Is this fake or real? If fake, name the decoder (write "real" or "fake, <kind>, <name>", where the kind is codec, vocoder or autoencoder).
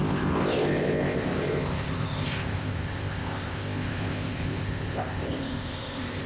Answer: fake, codec, ZipCodec